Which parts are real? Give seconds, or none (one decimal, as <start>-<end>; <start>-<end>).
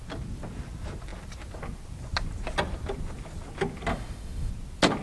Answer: 0.0-3.9; 4.5-5.0